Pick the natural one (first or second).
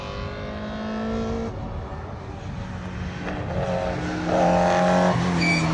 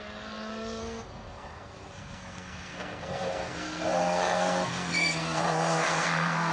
first